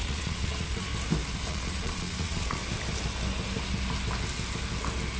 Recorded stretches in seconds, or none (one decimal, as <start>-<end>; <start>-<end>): 0.9-1.5; 2.6-5.2